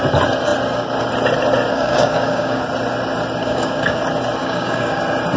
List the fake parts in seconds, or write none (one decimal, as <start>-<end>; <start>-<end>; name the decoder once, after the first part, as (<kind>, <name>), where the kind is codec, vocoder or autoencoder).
1.7-2.6 (codec, DAC); 3.4-4.0; 4.4-5.0